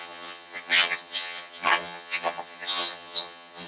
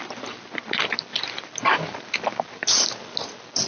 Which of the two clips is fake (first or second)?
first